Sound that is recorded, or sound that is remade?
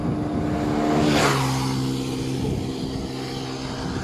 recorded